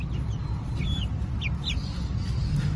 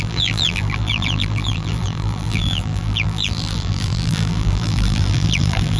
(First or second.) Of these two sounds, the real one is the first